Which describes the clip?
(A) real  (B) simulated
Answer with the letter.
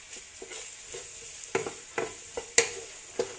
A